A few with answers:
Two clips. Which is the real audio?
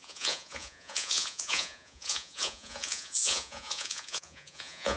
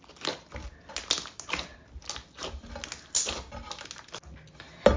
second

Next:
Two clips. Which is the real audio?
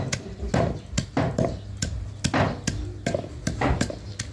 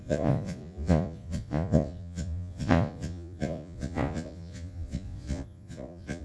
first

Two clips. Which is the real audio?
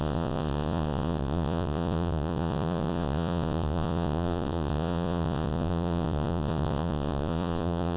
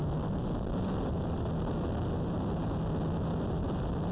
second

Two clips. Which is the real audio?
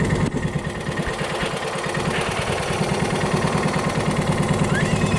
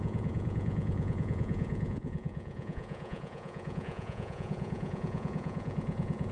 first